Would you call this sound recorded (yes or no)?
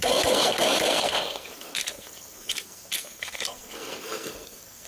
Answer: no